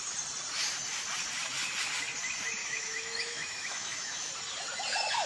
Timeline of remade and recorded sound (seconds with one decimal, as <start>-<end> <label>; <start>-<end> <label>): 0.0-2.6 recorded; 2.6-4.3 remade; 4.3-5.3 recorded